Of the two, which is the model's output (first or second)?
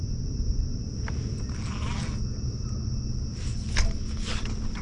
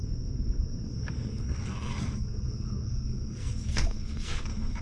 second